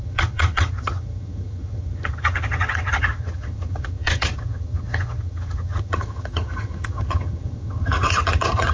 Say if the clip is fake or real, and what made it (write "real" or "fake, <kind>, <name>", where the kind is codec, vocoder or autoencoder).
fake, vocoder, HiFi-GAN